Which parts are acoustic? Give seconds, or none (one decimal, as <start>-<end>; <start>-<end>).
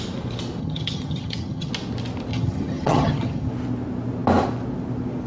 0.0-0.6; 1.7-2.3; 3.5-5.3